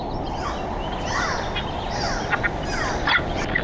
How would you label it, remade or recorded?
recorded